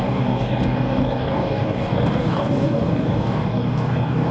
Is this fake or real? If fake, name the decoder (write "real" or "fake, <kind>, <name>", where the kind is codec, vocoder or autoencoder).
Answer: fake, codec, DAC